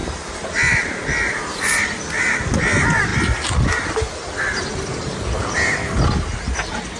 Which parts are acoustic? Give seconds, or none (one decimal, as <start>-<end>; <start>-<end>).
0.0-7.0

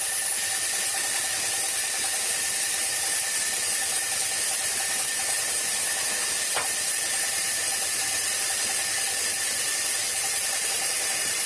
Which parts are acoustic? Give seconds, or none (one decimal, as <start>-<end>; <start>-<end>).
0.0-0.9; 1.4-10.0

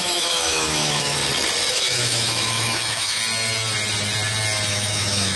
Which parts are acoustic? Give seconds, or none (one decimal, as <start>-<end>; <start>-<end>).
1.2-1.7; 3.2-4.7